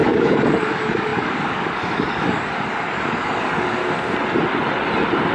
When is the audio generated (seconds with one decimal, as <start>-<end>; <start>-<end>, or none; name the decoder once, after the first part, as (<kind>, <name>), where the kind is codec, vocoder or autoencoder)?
0.0-3.8 (codec, DAC)

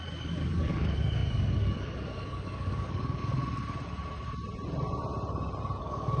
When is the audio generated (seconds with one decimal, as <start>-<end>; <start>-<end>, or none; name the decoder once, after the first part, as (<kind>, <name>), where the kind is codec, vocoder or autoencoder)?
0.0-3.3 (codec, DAC); 5.8-6.2

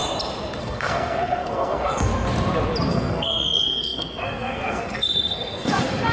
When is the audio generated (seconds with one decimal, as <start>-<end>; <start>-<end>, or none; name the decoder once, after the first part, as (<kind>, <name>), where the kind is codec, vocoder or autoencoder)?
0.6-2.1 (codec, SNAC); 2.9-6.1

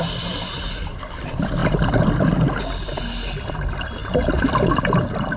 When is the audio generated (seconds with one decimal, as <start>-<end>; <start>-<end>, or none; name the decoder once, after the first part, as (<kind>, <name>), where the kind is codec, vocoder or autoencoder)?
none

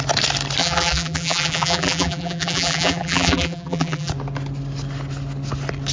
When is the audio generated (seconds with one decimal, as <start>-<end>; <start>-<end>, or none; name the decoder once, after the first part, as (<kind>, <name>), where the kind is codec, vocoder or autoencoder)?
0.6-4.1 (vocoder, BigVGAN v2)

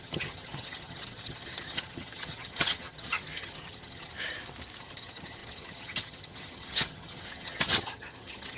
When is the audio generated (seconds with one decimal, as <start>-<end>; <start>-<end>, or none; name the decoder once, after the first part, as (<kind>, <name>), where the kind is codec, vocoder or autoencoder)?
0.0-4.1 (vocoder, HiFi-GAN); 4.8-8.6

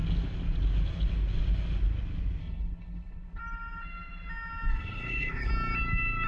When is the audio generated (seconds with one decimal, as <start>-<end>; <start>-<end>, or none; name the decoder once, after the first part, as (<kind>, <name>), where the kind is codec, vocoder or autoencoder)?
2.4-3.4 (codec, HILCodec); 4.7-5.5